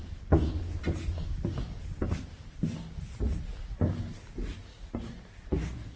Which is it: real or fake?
real